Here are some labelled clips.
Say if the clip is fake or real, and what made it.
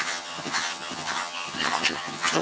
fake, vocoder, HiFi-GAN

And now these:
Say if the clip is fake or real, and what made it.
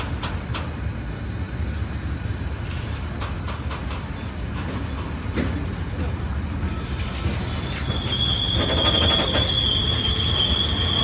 real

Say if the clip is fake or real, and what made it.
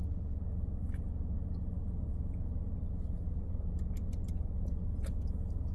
real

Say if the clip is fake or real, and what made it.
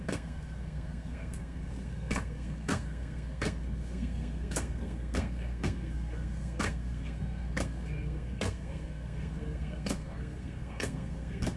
fake, codec, SNAC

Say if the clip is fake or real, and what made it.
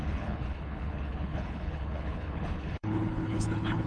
fake, codec, HILCodec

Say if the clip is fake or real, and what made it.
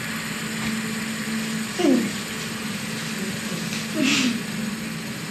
real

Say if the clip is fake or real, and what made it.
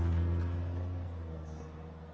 fake, codec, SNAC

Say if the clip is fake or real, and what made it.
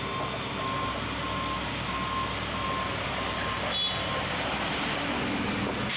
real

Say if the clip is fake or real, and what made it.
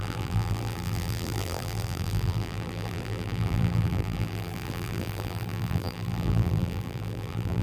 fake, vocoder, BigVGAN v2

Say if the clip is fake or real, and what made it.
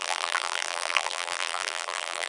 fake, vocoder, BigVGAN v2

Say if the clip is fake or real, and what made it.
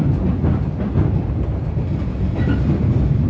real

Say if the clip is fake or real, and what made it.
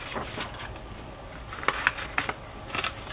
real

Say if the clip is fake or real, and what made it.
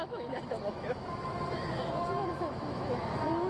fake, autoencoder, DAC-VAE